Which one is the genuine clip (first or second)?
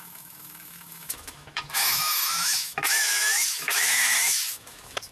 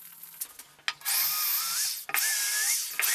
second